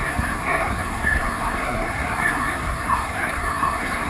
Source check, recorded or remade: remade